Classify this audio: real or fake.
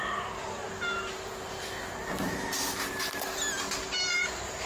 real